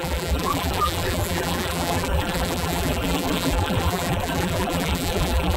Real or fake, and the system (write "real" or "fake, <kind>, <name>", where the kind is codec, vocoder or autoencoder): fake, vocoder, BigVGAN v2